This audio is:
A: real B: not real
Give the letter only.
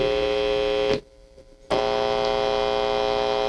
A